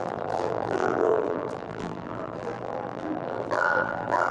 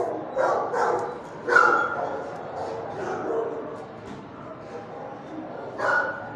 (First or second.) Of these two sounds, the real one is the second